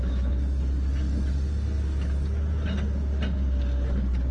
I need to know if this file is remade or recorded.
recorded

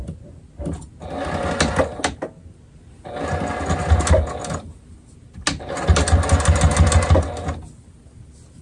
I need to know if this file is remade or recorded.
recorded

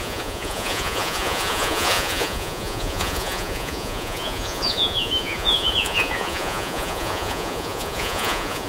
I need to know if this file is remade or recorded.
remade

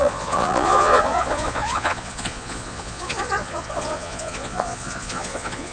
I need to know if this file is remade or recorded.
remade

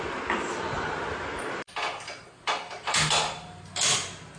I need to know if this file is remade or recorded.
recorded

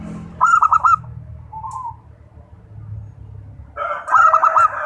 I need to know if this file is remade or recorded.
recorded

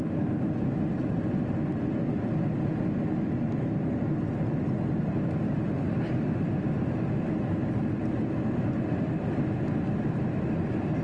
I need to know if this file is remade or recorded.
recorded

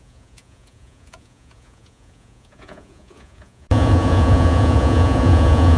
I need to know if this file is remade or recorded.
remade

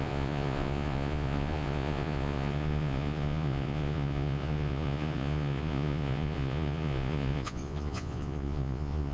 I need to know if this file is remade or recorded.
remade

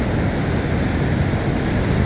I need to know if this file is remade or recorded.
recorded